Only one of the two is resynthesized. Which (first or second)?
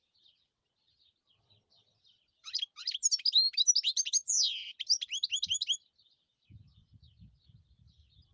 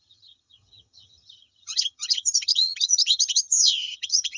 second